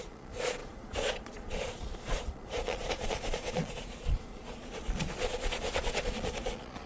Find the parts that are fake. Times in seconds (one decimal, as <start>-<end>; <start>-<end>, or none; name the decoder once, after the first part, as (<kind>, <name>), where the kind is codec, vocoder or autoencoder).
0.0-6.9 (vocoder, Vocos)